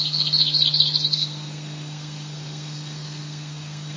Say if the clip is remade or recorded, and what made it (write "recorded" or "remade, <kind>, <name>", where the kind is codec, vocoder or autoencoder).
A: remade, codec, SNAC